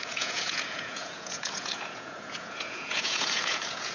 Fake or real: fake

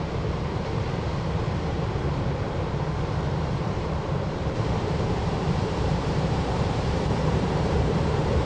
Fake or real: fake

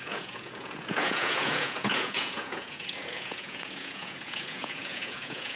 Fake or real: fake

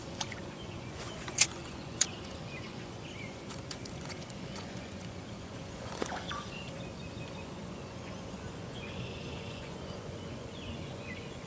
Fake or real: fake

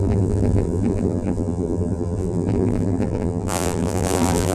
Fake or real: fake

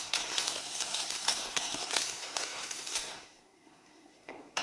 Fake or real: fake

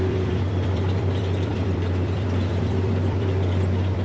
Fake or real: fake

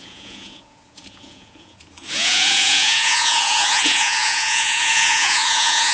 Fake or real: fake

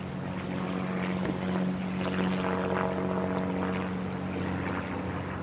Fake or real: real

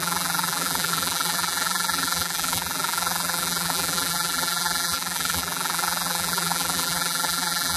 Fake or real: fake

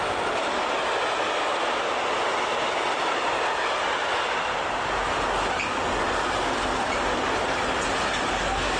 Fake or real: real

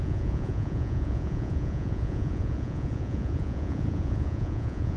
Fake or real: fake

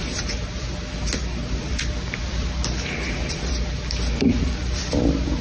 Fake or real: fake